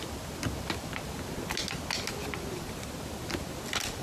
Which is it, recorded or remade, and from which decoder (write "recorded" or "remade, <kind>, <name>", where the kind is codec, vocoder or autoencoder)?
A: recorded